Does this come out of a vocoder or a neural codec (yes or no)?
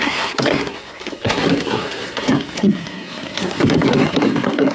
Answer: yes